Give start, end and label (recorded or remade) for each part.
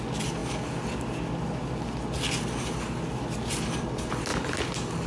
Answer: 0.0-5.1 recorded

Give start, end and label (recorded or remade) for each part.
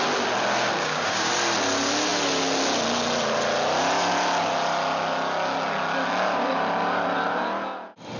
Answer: 0.0-0.8 recorded; 0.8-1.3 remade; 1.3-8.2 recorded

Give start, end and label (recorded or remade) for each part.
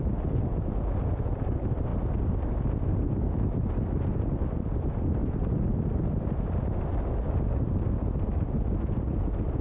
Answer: 0.0-5.2 recorded; 5.2-7.5 remade; 7.5-9.6 recorded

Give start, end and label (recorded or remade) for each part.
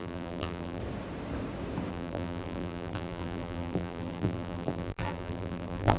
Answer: 0.0-0.8 remade; 0.8-1.9 recorded; 1.9-6.0 remade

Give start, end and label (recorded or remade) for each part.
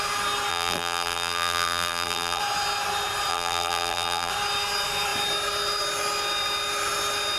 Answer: 0.0-0.5 recorded; 0.5-2.4 remade; 2.4-3.3 recorded; 3.3-4.3 remade; 4.3-7.4 recorded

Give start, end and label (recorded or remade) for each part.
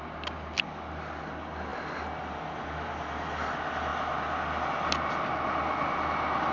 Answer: 0.0-6.5 recorded